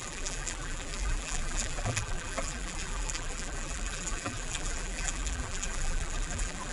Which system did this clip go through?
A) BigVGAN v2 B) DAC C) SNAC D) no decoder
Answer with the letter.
A